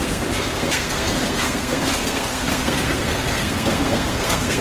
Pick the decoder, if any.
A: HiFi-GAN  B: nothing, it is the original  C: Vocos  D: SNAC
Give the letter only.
D